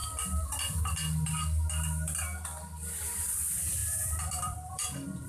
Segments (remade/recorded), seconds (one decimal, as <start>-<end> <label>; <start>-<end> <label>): 0.0-3.2 recorded; 3.2-5.3 remade